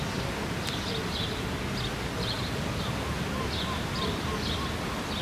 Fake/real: real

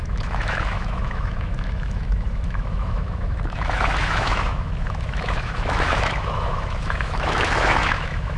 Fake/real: fake